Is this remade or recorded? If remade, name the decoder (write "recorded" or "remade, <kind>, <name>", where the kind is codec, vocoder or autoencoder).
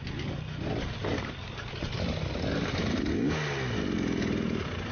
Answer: recorded